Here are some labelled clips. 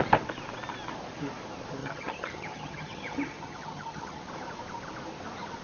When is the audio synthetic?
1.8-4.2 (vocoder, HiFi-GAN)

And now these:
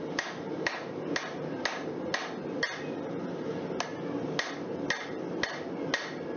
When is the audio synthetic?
none